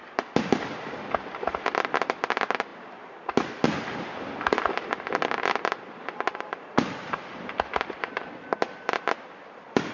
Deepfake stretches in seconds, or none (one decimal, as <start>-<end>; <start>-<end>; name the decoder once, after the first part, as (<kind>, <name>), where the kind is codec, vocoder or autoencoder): none